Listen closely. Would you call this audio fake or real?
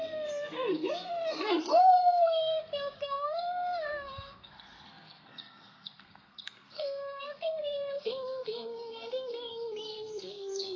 fake